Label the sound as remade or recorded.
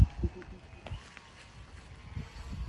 recorded